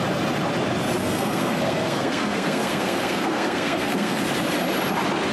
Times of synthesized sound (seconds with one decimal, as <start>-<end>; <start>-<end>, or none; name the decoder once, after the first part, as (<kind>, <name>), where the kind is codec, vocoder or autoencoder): 1.0-4.2 (codec, SNAC)